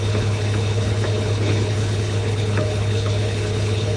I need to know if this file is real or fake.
fake